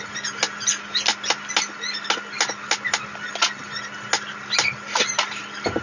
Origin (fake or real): real